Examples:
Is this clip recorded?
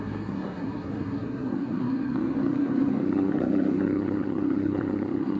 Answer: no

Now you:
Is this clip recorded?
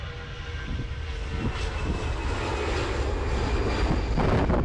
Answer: yes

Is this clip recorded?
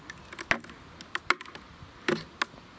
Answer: yes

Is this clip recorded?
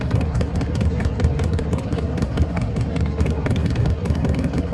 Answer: no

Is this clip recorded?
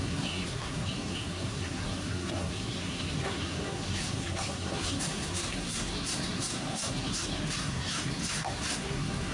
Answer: no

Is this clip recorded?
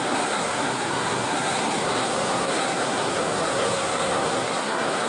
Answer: no